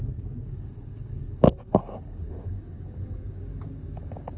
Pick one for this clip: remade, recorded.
remade